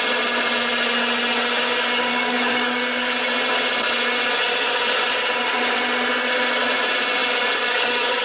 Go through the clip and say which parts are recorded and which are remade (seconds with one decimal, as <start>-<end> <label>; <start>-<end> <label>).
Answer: 0.0-2.1 recorded; 2.1-3.1 remade; 3.1-7.2 recorded; 7.2-8.2 remade